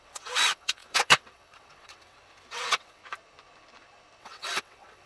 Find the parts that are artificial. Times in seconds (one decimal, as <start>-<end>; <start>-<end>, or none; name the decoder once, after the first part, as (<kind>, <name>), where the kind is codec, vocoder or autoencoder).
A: 0.0-3.0 (vocoder, WaveNeXt); 4.2-5.1